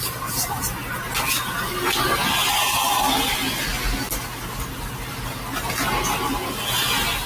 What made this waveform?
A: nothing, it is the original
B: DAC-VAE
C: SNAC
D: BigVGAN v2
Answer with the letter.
A